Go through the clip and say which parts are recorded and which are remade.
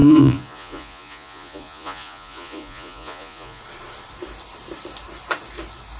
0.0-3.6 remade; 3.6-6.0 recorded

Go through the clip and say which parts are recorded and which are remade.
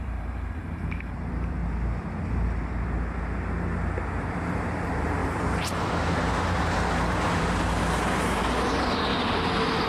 0.0-1.6 remade; 1.6-4.1 recorded; 4.1-9.1 remade; 9.1-9.9 recorded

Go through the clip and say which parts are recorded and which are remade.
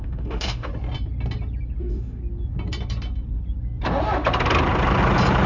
0.0-0.7 remade; 0.7-1.8 recorded; 1.8-2.2 remade; 2.2-5.5 recorded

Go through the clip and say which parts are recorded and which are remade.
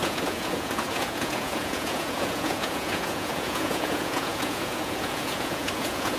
0.0-6.2 remade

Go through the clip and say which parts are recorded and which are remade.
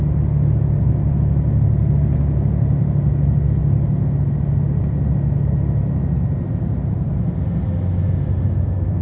0.0-9.0 recorded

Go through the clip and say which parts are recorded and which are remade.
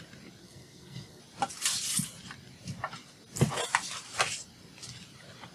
0.0-0.4 recorded; 0.4-1.2 remade; 1.2-5.5 recorded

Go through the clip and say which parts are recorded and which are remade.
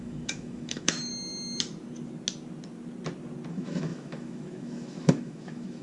0.0-1.1 remade; 1.1-3.5 recorded; 3.5-5.8 remade